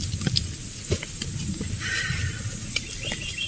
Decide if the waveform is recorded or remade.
recorded